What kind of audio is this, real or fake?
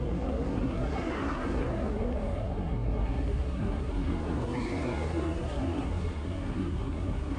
fake